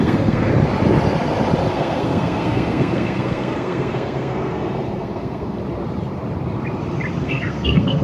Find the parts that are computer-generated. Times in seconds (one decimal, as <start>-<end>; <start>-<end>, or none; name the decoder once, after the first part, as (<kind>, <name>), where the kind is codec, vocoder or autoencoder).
0.0-0.5 (codec, SNAC); 1.7-5.6; 7.2-8.0